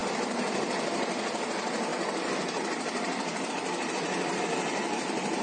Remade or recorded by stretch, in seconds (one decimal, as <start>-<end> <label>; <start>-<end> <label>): 0.0-0.6 recorded; 0.6-5.4 remade